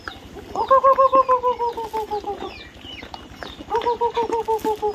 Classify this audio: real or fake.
real